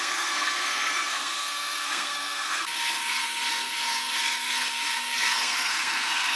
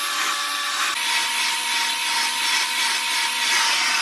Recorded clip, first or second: second